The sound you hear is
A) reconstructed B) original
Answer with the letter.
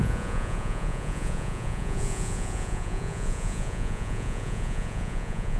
A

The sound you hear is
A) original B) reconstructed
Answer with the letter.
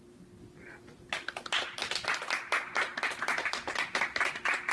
A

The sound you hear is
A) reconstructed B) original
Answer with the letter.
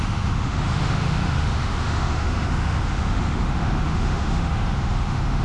A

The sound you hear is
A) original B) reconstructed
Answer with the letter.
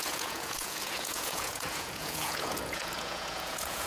B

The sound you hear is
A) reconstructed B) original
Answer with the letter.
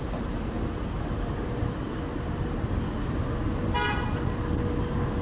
B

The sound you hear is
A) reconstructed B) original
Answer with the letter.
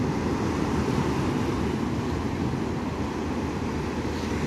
B